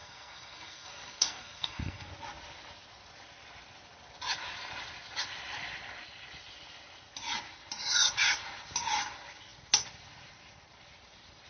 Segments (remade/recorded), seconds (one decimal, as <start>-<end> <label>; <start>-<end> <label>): 0.0-2.1 remade; 2.1-11.5 recorded